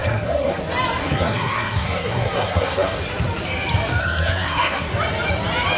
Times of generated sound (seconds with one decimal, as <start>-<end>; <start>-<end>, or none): 0.0-0.6; 1.0-3.0; 4.0-4.9